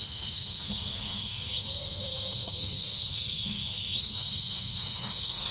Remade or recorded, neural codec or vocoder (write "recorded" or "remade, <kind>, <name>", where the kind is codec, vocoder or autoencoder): remade, codec, SNAC